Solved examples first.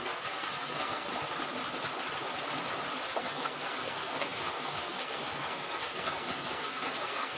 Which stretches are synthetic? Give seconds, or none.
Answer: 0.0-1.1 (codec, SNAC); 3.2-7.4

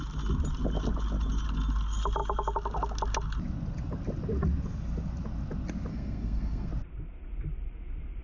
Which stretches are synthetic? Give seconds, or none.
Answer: 5.9-6.7 (codec, SNAC)